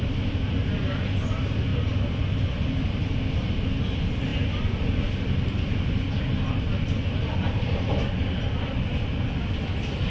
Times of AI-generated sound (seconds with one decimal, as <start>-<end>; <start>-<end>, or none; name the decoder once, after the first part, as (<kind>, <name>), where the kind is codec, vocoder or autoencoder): none